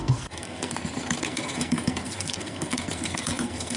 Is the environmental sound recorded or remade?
remade